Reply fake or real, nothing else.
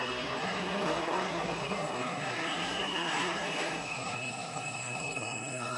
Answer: fake